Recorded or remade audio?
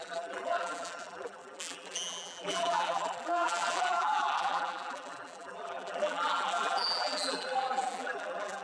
remade